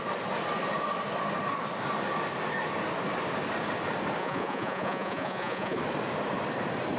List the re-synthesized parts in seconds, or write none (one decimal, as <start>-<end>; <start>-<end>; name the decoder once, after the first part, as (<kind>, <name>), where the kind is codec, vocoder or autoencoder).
4.2-5.8 (vocoder, Vocos)